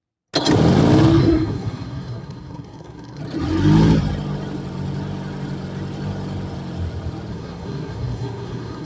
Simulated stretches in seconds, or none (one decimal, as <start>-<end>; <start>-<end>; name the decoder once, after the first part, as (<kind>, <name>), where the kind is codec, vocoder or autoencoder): 1.2-3.2 (codec, SNAC); 7.3-8.9